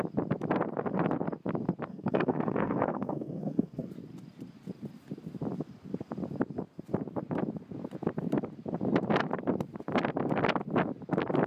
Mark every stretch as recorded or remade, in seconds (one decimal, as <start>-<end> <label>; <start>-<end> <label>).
0.0-1.9 recorded; 1.9-3.9 remade; 3.9-11.5 recorded